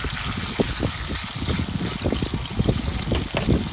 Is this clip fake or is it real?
real